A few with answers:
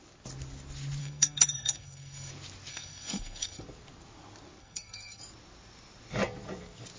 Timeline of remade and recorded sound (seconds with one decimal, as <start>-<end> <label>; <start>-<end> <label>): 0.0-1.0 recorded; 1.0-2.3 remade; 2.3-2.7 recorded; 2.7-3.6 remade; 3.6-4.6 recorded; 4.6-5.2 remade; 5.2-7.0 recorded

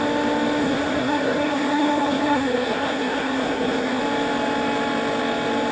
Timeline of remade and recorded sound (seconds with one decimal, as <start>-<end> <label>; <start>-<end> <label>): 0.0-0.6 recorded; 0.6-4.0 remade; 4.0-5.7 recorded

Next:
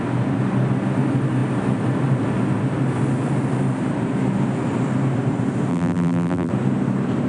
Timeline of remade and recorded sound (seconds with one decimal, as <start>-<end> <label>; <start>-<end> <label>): 0.0-5.7 recorded; 5.7-6.5 remade; 6.5-7.3 recorded

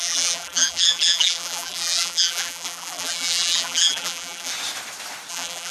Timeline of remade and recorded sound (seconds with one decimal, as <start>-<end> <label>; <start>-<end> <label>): 0.0-4.5 remade; 4.5-5.3 recorded; 5.3-5.7 remade